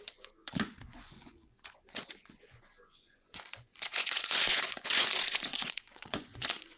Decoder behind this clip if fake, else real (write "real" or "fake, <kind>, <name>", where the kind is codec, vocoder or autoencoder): fake, vocoder, Vocos